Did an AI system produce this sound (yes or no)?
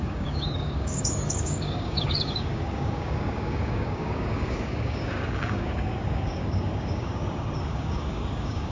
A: yes